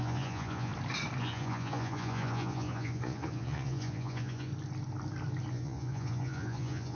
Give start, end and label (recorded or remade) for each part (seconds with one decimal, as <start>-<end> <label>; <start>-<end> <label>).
0.0-0.7 remade; 0.7-1.2 recorded; 1.2-4.5 remade; 4.5-5.5 recorded; 5.5-6.9 remade